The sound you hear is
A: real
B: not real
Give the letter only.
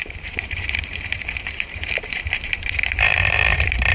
B